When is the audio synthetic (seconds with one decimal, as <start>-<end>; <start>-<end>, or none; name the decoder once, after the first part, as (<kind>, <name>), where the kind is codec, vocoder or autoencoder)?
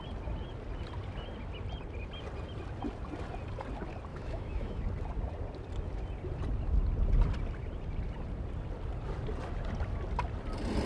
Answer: 4.1-4.8 (autoencoder, DAC-VAE)